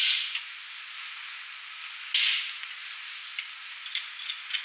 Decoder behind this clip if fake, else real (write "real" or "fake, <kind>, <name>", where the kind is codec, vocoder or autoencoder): real